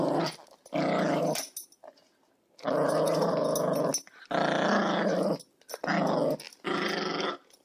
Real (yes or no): yes